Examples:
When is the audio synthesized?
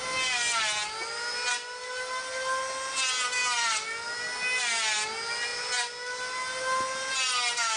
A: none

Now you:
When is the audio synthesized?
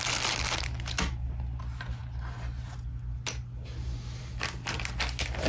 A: none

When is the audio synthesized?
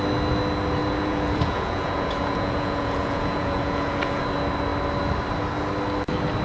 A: 0.8-4.2 (vocoder, Vocos)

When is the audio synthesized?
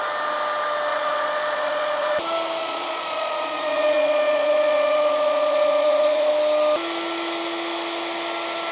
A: 0.9-2.2 (vocoder, Vocos); 2.6-6.3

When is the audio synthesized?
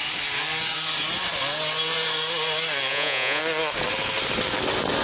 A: 2.9-3.4 (vocoder, Vocos)